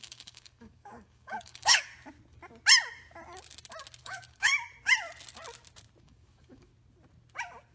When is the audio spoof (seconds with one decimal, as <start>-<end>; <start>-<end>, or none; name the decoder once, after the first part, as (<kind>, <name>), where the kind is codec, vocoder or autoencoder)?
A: 0.0-1.9 (codec, DAC); 4.0-4.5; 6.0-6.7